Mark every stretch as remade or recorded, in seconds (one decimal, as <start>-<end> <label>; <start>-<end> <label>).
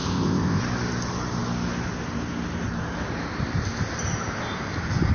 0.0-0.6 remade; 0.6-5.1 recorded